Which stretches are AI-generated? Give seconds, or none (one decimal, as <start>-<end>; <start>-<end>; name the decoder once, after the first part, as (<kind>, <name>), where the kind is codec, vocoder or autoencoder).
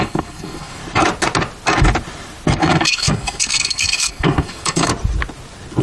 0.0-0.8 (codec, SNAC); 2.6-4.9